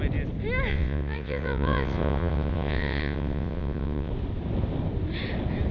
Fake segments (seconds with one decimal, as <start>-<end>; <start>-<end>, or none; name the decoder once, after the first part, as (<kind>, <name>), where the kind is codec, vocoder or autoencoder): 0.7-4.1 (vocoder, WaveNeXt)